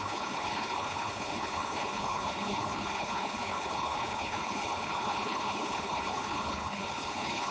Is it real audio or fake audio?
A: fake